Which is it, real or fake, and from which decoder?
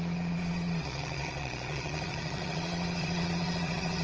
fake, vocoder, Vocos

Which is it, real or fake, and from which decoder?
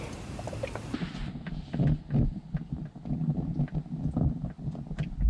fake, vocoder, BigVGAN v2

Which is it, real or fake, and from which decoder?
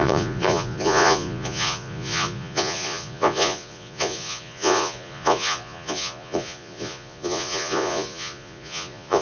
fake, vocoder, Vocos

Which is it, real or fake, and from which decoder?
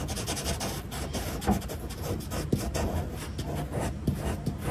real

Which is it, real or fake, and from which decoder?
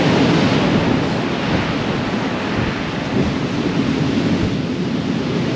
real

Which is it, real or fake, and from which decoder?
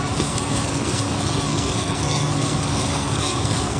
fake, codec, SNAC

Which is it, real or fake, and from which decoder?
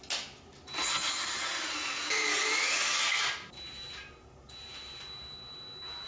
real